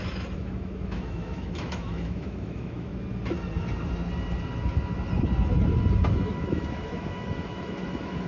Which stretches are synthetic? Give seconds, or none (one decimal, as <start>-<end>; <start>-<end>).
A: 0.0-2.9; 6.1-8.3